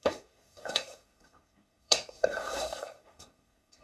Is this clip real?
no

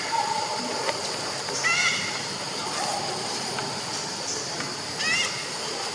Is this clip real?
yes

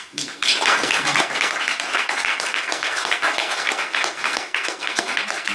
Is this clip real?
no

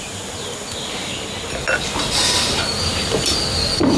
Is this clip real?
yes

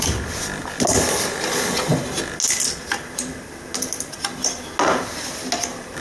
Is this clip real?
yes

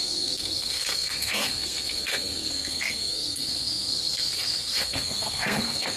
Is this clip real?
no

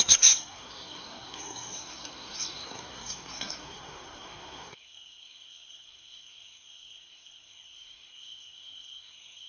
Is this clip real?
no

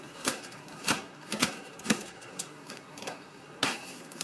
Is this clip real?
no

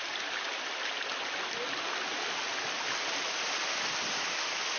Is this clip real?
yes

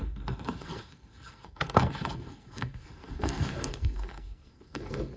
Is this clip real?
no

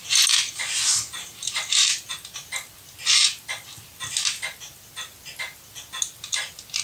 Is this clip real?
yes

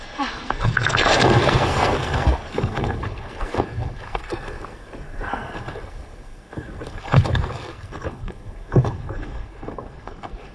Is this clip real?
no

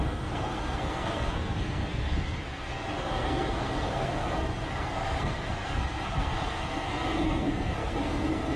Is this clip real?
no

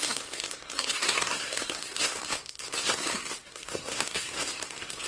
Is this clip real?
no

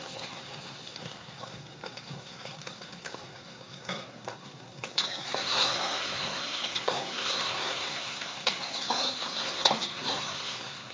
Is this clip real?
no